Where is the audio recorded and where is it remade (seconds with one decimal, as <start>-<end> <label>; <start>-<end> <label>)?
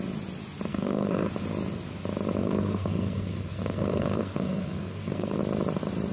0.0-0.7 recorded; 0.7-1.3 remade; 1.3-2.4 recorded; 2.4-5.4 remade; 5.4-6.1 recorded